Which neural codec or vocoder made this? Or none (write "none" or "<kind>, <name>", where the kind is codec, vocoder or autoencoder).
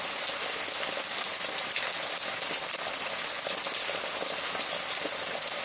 none